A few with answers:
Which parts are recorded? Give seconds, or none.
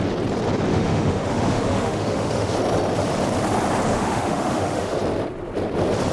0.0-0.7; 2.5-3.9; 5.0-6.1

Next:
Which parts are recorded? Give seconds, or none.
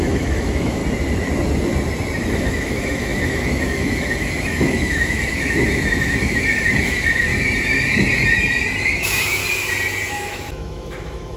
0.8-2.3; 7.3-9.0; 9.4-10.1